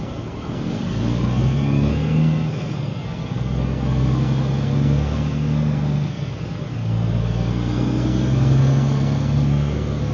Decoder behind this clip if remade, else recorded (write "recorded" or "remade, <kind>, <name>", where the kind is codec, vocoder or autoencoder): remade, codec, SNAC